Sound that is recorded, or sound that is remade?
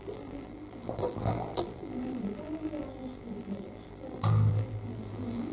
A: remade